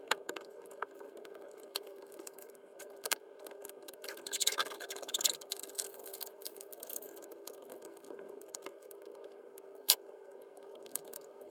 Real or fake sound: fake